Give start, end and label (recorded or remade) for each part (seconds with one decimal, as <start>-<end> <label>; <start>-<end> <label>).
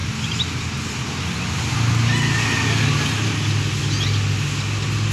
0.0-5.1 recorded